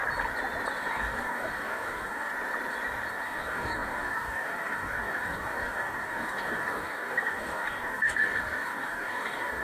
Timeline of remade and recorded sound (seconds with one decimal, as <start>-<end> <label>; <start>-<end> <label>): 0.0-0.9 recorded; 0.9-2.3 remade; 2.3-3.1 recorded; 3.1-9.6 remade